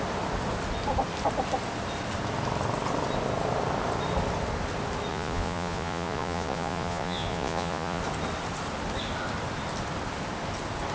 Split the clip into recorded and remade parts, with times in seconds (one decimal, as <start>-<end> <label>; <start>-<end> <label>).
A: 0.0-5.1 recorded; 5.1-8.0 remade; 8.0-10.9 recorded